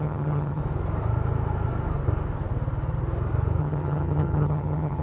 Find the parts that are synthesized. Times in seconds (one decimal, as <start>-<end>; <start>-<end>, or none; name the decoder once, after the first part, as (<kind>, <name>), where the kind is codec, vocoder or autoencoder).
0.0-0.6 (vocoder, HiFi-GAN); 3.6-5.0